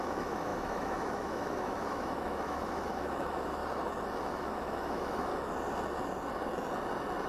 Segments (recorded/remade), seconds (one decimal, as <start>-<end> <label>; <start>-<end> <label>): 0.0-3.6 remade; 3.6-4.2 recorded; 4.2-5.3 remade; 5.3-7.3 recorded